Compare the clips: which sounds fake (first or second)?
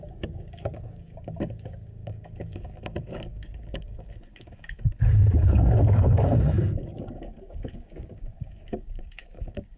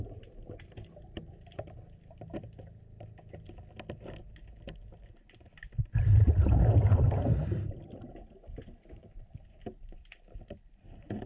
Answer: first